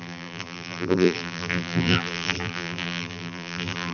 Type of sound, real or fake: fake